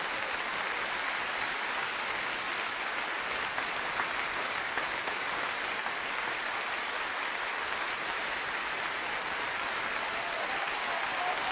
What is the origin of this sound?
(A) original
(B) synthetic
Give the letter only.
A